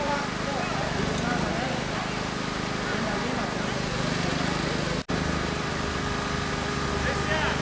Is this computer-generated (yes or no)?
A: no